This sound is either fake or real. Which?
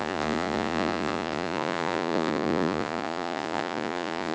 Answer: fake